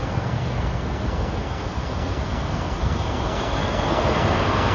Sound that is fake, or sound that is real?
fake